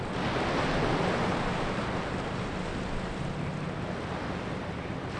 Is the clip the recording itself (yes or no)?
yes